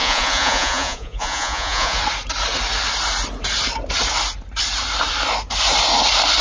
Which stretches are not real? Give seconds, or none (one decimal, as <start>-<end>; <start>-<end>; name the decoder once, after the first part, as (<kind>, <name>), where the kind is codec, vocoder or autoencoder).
0.0-2.0 (vocoder, Vocos)